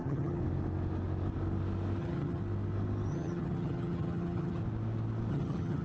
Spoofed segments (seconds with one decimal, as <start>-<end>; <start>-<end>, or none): 0.0-0.4; 2.0-2.4; 3.1-4.6; 5.3-5.8